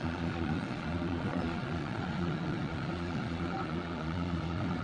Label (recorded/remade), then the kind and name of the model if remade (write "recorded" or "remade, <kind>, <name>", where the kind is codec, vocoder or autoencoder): remade, vocoder, Vocos